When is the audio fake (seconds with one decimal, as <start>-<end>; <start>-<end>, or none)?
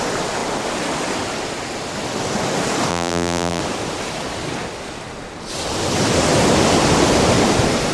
2.9-3.6